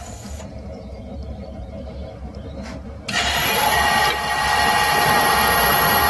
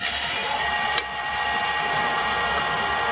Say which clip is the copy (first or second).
first